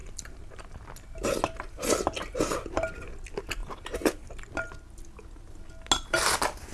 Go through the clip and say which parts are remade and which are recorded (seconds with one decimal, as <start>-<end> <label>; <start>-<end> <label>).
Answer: 0.0-3.6 recorded; 3.6-4.3 remade; 4.3-6.7 recorded